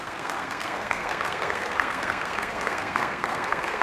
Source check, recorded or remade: remade